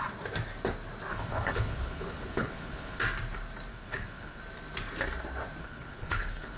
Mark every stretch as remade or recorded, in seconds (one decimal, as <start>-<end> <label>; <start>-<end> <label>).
0.0-1.1 recorded; 1.1-3.0 remade; 3.0-3.7 recorded; 3.7-4.4 remade; 4.4-5.6 recorded; 5.6-6.6 remade